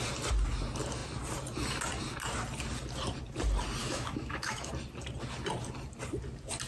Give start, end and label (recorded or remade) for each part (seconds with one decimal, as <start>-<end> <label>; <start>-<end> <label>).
0.0-3.8 recorded; 3.8-4.7 remade; 4.7-6.7 recorded